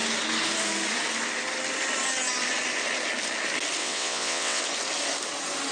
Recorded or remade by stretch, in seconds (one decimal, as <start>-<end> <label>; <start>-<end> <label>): 0.0-3.8 recorded; 3.8-4.6 remade; 4.6-5.7 recorded